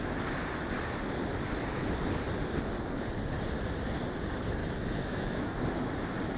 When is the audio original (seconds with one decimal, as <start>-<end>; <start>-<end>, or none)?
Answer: 0.0-4.6; 5.9-6.4